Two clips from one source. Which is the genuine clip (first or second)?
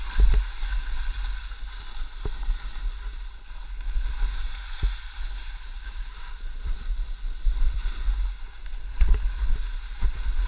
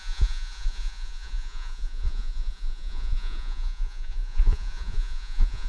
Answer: first